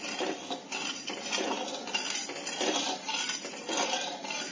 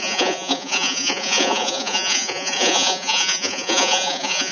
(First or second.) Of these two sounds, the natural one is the first